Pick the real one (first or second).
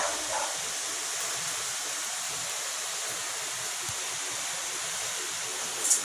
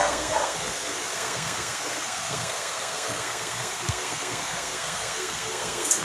first